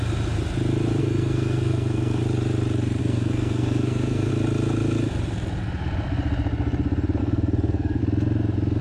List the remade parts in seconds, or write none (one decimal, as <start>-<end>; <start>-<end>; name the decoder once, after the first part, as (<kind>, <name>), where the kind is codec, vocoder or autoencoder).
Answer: 1.0-2.2 (codec, SNAC); 3.0-4.3; 7.2-8.0